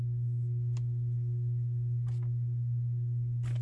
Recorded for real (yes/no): yes